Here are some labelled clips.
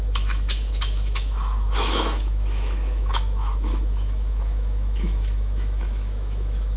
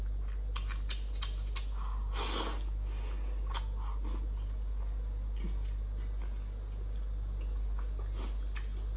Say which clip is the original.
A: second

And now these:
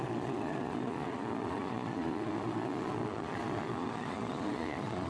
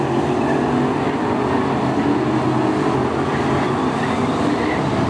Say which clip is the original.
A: second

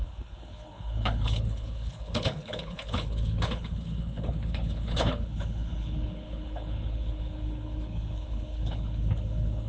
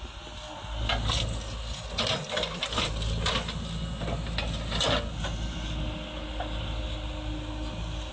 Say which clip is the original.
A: second